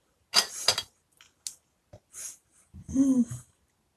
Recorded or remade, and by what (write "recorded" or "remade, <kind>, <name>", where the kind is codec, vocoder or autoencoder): recorded